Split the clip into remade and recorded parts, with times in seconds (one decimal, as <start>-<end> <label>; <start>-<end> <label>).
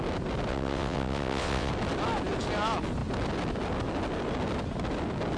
0.0-0.5 recorded; 0.5-1.7 remade; 1.7-5.4 recorded